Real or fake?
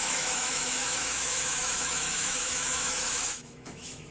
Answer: fake